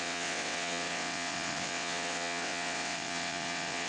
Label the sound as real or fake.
fake